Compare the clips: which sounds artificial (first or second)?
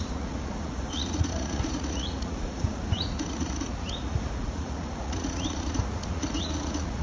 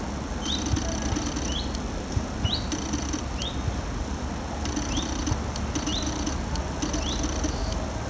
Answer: first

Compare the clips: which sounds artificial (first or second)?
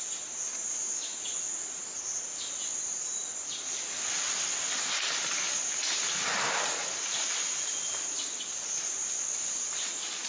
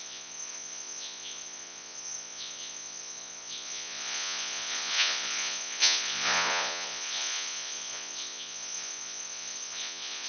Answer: second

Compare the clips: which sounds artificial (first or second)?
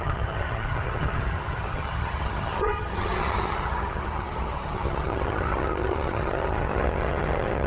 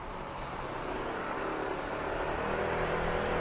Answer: first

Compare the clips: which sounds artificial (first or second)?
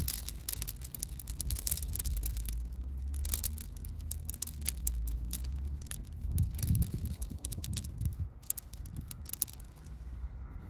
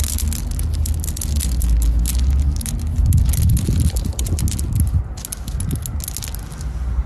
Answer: first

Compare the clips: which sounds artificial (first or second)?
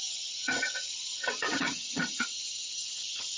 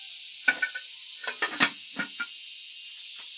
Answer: first